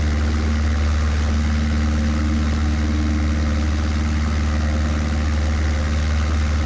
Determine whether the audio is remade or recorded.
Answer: recorded